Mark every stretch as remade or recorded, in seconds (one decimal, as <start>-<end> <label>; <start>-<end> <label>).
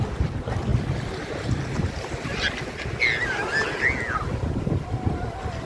0.0-5.7 recorded